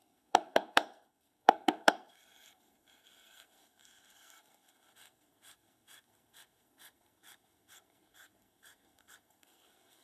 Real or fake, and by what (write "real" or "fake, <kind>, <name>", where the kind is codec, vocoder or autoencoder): fake, codec, SNAC